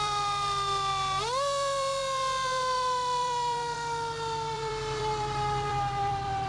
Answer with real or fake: fake